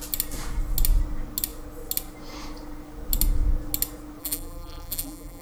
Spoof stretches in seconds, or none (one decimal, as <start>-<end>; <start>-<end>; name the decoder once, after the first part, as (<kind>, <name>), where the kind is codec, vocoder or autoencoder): 4.2-5.4 (vocoder, BigVGAN v2)